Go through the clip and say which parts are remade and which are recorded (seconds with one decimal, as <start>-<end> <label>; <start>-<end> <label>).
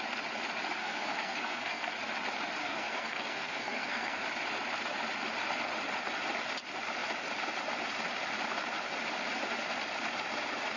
0.0-0.8 recorded; 0.8-1.9 remade; 1.9-2.6 recorded; 2.6-4.2 remade; 4.2-10.8 recorded